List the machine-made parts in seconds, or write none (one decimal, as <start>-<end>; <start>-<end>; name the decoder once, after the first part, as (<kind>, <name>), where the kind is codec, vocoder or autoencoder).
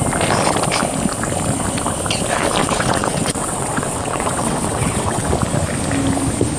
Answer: 2.6-5.3 (vocoder, WaveNeXt)